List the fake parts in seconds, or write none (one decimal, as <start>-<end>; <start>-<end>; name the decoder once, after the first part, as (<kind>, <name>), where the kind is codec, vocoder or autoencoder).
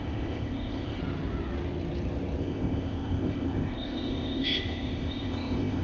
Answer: 0.0-1.0 (codec, ZipCodec); 2.4-5.8